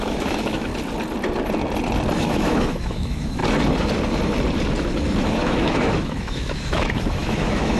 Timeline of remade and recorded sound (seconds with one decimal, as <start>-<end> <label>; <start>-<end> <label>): 0.0-0.7 remade; 0.7-2.2 recorded; 2.2-3.4 remade; 3.4-5.2 recorded; 5.2-7.8 remade